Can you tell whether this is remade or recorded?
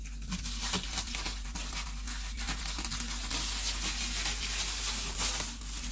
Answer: recorded